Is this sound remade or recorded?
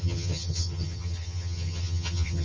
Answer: remade